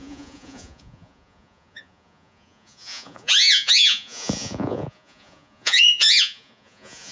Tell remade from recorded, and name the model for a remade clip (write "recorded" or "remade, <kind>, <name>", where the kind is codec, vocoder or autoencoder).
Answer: remade, vocoder, Vocos